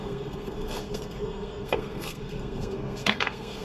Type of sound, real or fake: fake